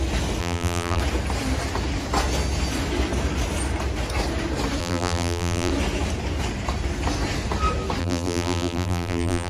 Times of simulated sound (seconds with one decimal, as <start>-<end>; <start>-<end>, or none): 0.4-1.0; 4.8-5.7; 8.0-9.5